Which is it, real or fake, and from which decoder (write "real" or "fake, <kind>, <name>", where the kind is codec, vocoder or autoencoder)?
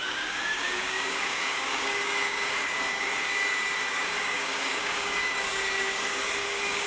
fake, codec, DAC